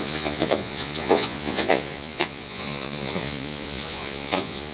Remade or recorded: remade